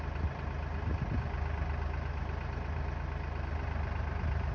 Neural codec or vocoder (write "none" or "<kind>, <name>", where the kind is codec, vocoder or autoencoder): none